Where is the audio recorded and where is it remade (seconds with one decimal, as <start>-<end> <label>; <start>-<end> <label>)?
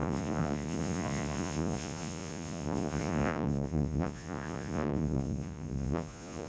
0.0-6.5 remade